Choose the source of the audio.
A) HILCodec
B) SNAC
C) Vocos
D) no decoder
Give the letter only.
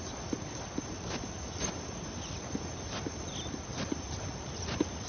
D